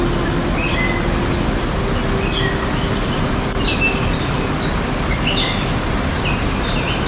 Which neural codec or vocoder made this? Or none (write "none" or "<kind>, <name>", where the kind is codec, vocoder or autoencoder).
none